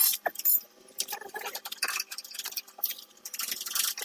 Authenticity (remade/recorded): remade